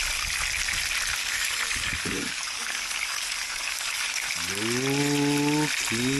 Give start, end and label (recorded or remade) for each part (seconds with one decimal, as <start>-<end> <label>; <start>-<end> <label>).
0.0-1.2 recorded; 1.2-4.3 remade; 4.3-6.2 recorded